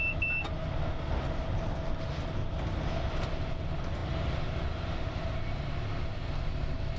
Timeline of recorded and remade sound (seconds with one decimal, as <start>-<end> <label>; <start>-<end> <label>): 0.0-7.0 recorded